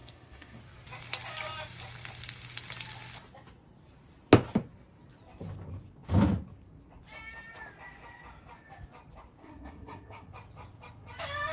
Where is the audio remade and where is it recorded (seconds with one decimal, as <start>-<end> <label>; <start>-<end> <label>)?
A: 0.0-0.6 remade; 0.6-9.4 recorded; 9.4-10.3 remade; 10.3-11.5 recorded